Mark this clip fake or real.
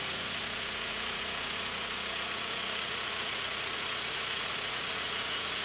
fake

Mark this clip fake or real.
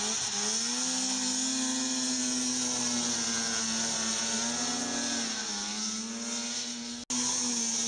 real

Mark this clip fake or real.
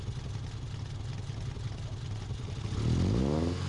real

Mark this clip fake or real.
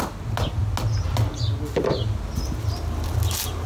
real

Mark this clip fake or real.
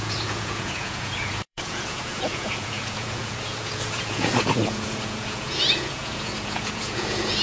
fake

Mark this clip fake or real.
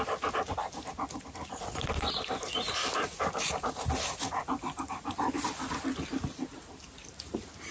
real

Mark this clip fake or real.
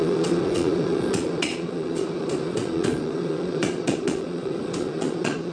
fake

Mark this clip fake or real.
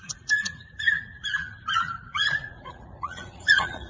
fake